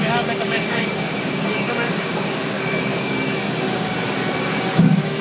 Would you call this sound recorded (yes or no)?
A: no